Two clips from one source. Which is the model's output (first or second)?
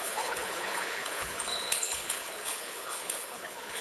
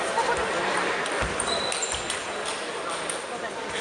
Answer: first